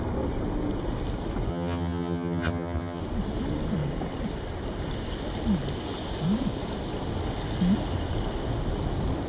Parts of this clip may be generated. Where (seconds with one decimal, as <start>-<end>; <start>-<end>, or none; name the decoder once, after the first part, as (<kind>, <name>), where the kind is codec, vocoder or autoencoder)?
1.5-3.0 (vocoder, HiFi-GAN)